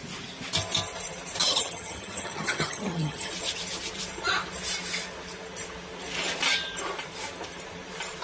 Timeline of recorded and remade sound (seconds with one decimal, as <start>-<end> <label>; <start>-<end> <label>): 0.0-1.4 recorded; 1.4-3.3 remade; 3.3-8.2 recorded